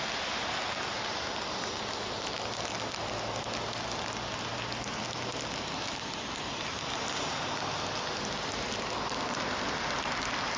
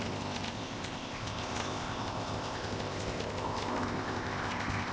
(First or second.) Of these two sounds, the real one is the first